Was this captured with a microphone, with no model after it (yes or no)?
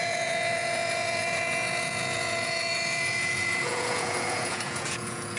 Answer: no